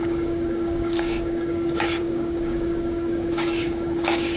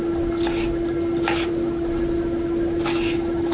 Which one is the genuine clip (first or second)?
second